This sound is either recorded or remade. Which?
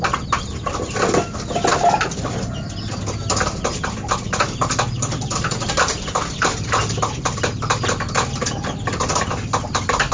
recorded